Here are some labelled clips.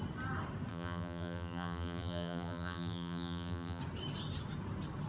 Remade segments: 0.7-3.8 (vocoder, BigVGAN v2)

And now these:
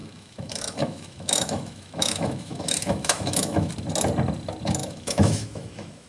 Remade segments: 0.0-3.7 (autoencoder, DAC-VAE); 4.8-6.1

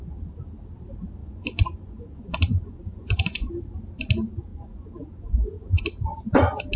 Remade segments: 1.2-3.5 (vocoder, Vocos); 4.5-5.8

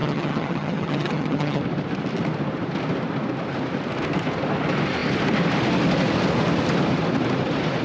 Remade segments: 0.0-1.6 (vocoder, HiFi-GAN)

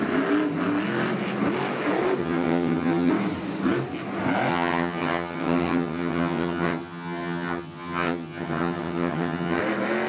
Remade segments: 2.2-3.1 (vocoder, HiFi-GAN); 4.5-9.6

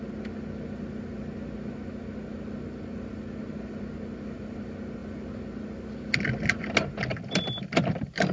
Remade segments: none